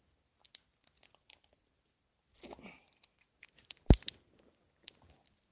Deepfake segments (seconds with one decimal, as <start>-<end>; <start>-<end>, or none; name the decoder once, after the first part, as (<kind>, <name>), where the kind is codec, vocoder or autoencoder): none